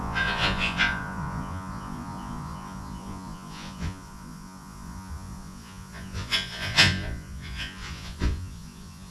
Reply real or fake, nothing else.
fake